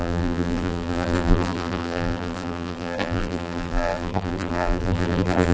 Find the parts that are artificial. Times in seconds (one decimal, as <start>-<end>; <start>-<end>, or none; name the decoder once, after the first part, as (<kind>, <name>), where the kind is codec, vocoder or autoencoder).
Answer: 0.0-5.5 (vocoder, BigVGAN v2)